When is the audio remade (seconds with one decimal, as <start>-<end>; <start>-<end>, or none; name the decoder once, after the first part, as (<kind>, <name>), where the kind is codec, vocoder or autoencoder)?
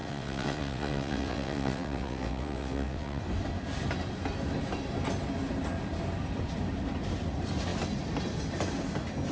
0.0-3.2 (vocoder, WaveNeXt)